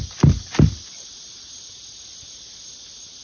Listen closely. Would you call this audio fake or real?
real